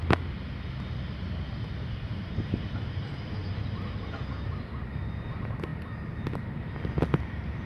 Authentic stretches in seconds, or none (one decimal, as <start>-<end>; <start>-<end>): 0.0-1.6